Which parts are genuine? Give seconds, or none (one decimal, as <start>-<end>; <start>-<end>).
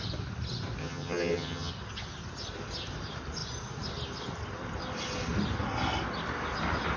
0.0-0.8; 1.7-7.0